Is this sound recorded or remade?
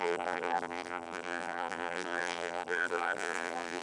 remade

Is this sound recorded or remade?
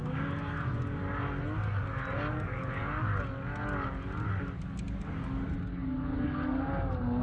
recorded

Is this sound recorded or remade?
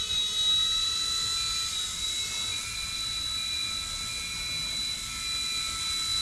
recorded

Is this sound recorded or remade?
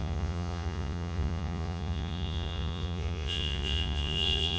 remade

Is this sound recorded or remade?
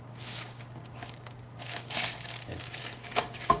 remade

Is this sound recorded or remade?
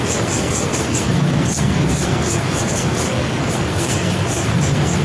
remade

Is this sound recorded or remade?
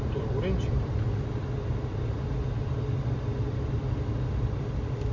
recorded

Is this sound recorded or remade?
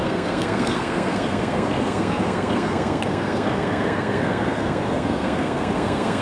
remade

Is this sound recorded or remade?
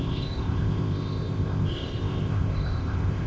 remade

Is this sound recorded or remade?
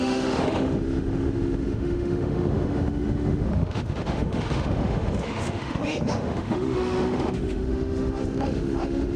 remade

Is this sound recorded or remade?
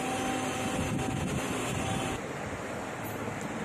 recorded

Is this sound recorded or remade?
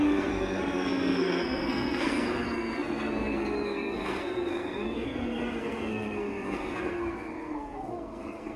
remade